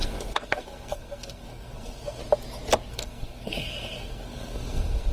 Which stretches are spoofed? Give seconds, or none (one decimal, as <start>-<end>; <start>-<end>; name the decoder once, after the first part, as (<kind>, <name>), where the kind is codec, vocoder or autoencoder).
0.0-2.2 (codec, SNAC); 2.9-5.1